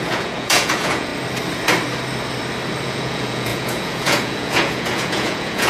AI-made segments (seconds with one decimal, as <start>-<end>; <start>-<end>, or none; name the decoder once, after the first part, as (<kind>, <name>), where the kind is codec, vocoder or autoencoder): 0.0-1.1 (vocoder, Vocos); 2.8-5.7